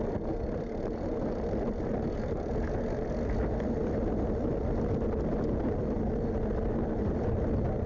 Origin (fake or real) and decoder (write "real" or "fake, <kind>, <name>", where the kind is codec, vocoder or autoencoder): real